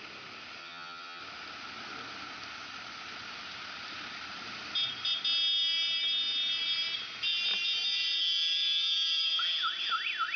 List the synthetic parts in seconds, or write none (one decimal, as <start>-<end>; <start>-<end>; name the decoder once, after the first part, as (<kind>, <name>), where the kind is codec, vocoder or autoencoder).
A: 0.6-1.2 (vocoder, HiFi-GAN)